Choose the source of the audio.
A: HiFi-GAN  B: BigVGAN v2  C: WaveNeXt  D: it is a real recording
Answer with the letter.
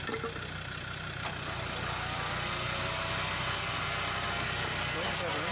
D